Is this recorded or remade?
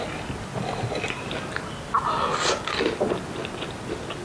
recorded